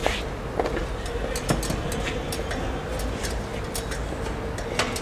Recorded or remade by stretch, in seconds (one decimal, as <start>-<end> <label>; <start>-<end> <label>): 0.0-5.0 recorded